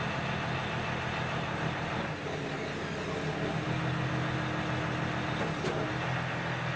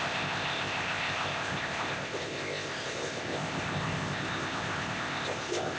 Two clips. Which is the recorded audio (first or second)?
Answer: first